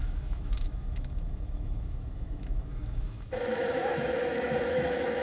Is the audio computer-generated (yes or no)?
yes